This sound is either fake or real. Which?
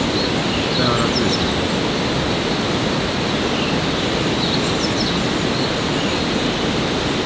real